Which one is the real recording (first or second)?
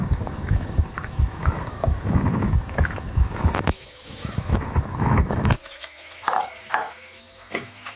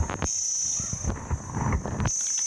second